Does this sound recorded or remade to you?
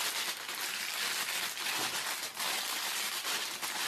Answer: recorded